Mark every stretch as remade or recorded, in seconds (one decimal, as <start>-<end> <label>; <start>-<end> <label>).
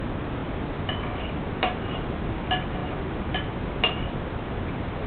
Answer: 0.0-5.1 recorded